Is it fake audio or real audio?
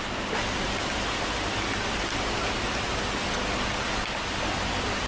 real